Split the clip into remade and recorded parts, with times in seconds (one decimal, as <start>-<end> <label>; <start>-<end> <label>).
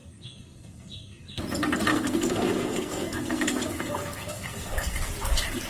0.0-1.4 remade; 1.4-1.9 recorded; 1.9-5.1 remade; 5.1-5.7 recorded